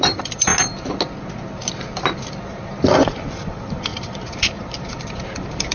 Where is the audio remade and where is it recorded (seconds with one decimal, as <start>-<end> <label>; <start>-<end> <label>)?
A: 0.0-0.5 remade; 0.5-2.9 recorded; 2.9-5.7 remade